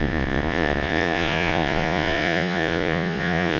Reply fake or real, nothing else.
fake